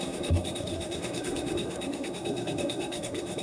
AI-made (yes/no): yes